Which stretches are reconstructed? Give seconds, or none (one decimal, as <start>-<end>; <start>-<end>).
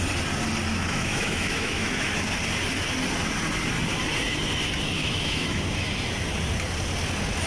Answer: 0.7-2.1; 5.0-5.6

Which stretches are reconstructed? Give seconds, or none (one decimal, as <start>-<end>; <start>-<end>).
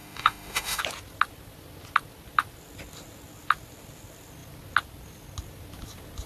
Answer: 0.0-0.8